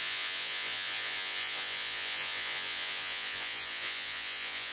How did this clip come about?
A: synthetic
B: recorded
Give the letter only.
A